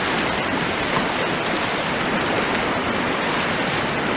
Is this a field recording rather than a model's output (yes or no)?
yes